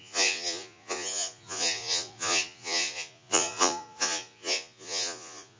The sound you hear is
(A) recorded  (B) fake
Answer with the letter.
B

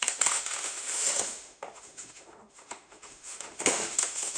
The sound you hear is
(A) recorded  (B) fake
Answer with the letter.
B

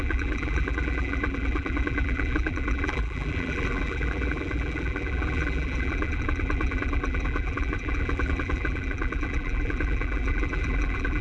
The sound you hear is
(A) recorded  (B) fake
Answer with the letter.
B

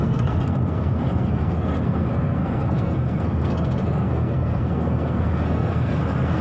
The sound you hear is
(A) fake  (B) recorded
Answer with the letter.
A